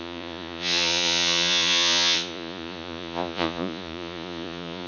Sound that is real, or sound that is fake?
fake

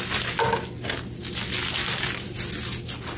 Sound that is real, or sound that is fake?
real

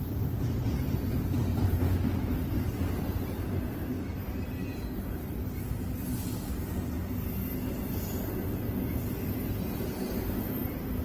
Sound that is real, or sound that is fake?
real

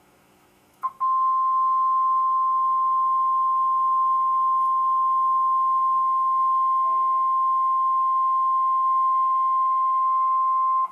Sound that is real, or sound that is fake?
fake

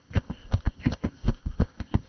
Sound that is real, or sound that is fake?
fake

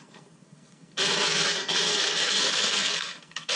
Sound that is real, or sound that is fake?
fake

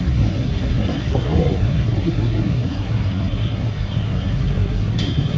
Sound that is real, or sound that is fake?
fake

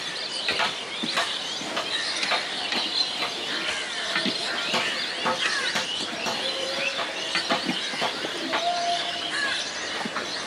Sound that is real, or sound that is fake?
real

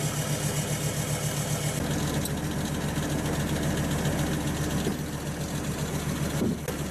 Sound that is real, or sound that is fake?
real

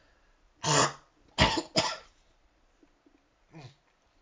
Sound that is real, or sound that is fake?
real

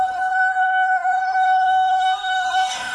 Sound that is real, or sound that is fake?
fake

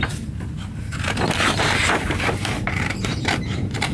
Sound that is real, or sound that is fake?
fake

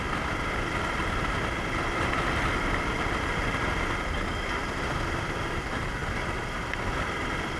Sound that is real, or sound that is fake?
real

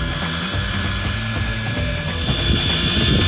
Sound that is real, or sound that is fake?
real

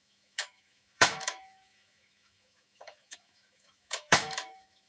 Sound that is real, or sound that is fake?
fake